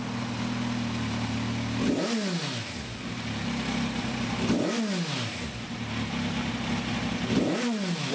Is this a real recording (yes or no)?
yes